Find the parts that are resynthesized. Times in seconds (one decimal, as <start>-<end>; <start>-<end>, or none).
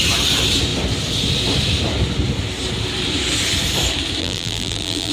4.2-5.1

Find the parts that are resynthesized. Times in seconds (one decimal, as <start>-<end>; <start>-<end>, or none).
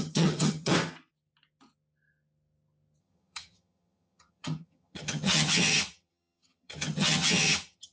0.0-0.7; 3.0-7.9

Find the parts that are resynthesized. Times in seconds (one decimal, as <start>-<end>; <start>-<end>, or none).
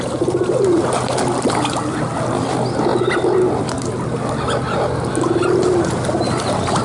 none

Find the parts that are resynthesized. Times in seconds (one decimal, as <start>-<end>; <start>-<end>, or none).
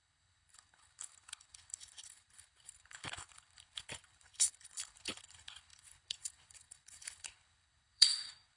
0.0-8.6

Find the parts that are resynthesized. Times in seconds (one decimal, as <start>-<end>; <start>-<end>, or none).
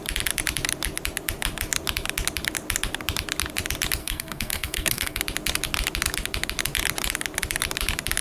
4.0-5.2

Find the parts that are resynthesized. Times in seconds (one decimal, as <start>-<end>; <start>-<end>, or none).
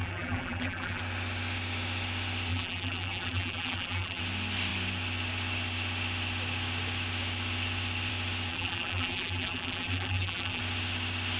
0.0-1.0; 2.5-4.2; 8.5-10.6